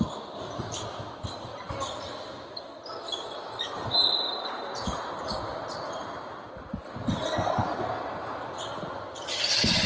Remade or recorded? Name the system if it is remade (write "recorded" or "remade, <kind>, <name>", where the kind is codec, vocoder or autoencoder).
recorded